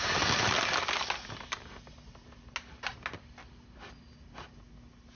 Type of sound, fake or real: real